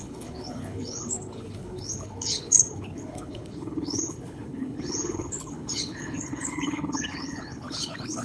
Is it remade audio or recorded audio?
remade